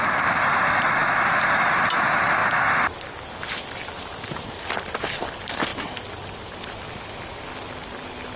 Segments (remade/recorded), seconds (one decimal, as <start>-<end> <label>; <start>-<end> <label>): 0.0-8.4 recorded